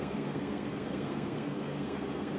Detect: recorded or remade remade